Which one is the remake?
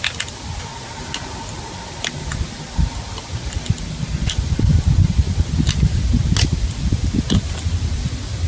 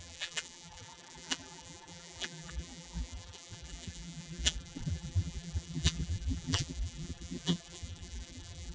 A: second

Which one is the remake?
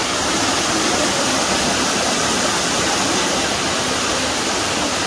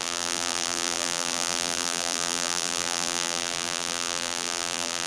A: second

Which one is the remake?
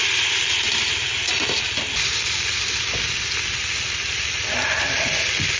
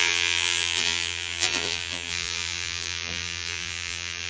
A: second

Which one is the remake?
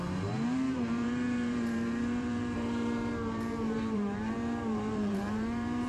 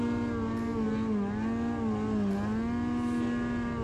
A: first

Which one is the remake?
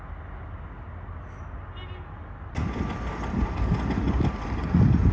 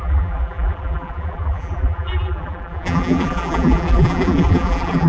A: second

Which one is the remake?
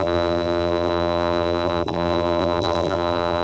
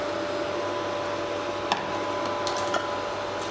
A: first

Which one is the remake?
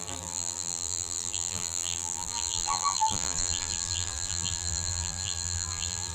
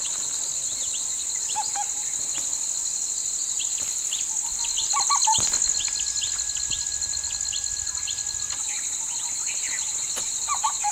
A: first